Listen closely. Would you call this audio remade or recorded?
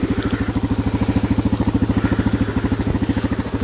recorded